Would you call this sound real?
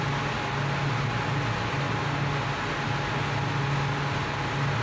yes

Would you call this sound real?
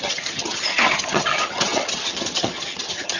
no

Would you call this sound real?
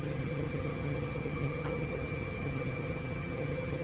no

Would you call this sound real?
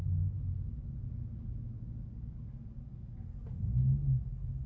yes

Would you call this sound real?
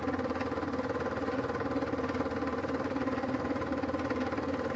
yes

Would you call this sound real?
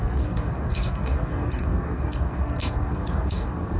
no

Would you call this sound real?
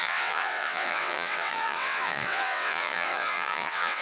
no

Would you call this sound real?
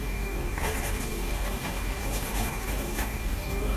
no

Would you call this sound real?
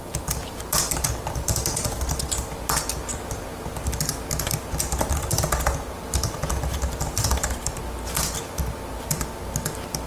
yes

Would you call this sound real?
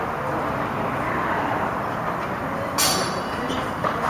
yes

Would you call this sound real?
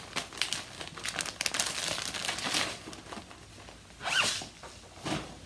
yes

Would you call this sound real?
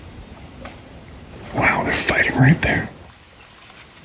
yes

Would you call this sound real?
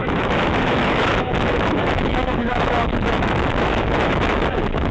no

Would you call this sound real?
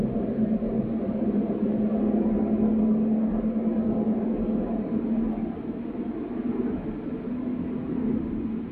yes